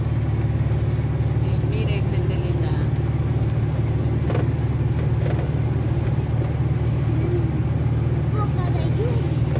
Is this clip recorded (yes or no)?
yes